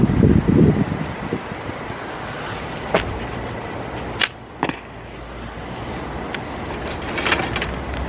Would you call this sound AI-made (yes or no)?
no